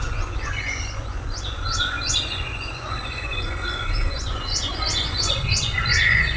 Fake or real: fake